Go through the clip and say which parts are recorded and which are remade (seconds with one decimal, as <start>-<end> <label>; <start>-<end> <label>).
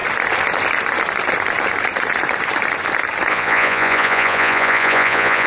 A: 0.0-3.3 recorded; 3.3-5.5 remade